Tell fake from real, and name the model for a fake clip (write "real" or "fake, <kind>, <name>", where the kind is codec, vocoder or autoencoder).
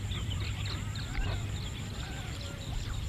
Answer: fake, vocoder, BigVGAN v2